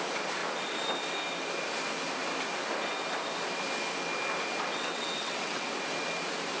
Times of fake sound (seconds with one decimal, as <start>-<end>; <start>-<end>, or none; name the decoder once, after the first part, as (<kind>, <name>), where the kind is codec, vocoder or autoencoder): 4.7-5.7 (vocoder, WaveNeXt)